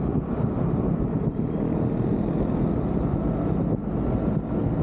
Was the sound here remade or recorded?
recorded